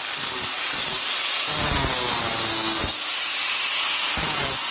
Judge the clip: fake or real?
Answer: real